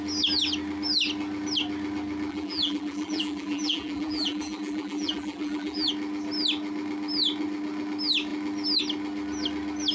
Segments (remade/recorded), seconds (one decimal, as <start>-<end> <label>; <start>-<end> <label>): 0.0-2.3 recorded; 2.3-5.9 remade; 5.9-9.9 recorded